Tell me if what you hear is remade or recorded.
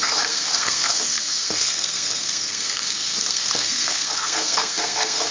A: remade